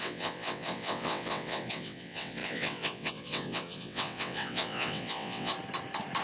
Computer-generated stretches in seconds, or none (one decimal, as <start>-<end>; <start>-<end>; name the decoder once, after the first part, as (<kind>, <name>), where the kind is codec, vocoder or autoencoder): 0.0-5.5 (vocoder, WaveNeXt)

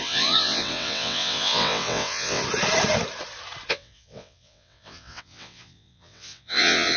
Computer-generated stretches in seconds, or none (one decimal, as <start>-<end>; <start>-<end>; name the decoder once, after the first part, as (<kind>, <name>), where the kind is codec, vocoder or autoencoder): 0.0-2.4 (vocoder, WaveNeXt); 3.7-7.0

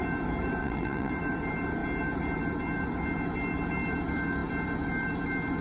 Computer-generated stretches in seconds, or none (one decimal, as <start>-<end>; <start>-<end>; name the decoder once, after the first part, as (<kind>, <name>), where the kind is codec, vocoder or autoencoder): 0.6-1.1 (vocoder, WaveNeXt)